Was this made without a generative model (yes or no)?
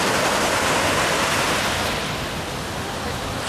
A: yes